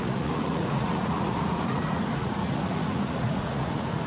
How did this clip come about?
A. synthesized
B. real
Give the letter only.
A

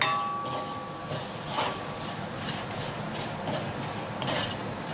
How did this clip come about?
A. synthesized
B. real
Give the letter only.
B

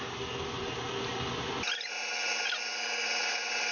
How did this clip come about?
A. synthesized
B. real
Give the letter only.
B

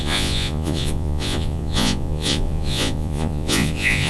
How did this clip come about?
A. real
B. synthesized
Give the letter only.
B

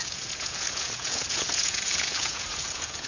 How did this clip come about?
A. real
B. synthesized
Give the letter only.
B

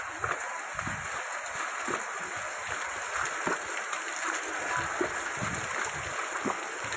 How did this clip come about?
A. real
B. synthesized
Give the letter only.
A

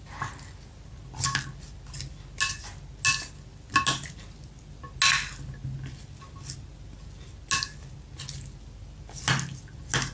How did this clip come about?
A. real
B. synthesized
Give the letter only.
A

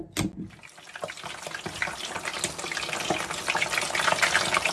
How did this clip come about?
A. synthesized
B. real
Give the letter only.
B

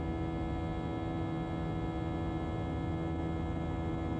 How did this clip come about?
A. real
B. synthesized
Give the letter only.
A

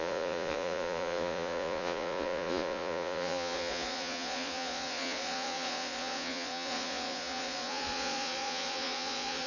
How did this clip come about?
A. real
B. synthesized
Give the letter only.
B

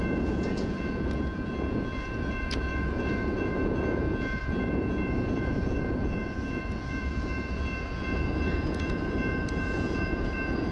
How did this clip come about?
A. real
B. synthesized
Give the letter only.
B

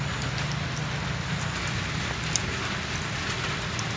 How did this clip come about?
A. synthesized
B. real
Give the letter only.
B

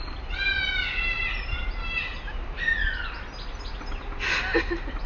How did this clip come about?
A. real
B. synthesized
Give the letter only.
A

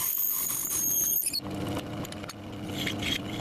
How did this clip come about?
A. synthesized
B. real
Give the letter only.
B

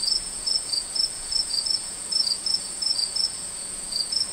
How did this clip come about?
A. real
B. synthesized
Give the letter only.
B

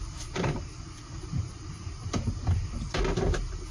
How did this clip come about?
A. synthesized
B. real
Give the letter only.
B